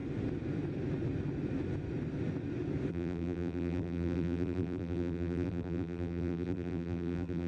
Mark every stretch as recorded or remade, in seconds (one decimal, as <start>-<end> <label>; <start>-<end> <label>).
0.0-2.9 recorded; 2.9-7.5 remade